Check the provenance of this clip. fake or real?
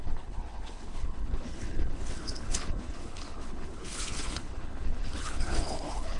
fake